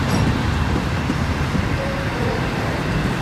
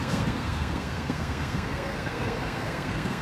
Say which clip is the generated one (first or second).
second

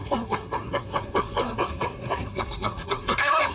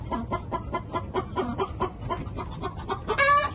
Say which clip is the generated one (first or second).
first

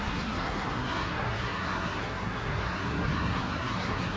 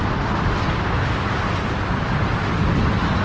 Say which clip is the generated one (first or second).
first